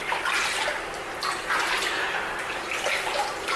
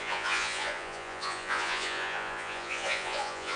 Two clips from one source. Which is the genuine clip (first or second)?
first